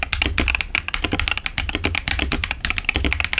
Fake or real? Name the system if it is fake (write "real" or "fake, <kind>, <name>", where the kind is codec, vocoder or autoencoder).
real